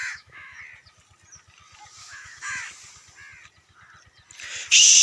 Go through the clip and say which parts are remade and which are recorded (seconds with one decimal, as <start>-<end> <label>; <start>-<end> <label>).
0.0-0.6 remade; 0.6-2.0 recorded; 2.0-2.6 remade; 2.6-5.0 recorded